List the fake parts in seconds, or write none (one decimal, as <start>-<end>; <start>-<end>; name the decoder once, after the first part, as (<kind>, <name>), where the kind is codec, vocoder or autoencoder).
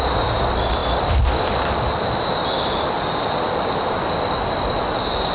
none